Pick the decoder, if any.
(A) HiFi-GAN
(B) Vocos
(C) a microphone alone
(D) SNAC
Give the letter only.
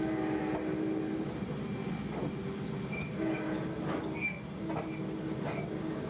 C